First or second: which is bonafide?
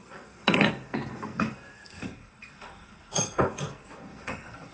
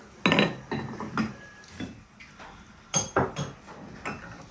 second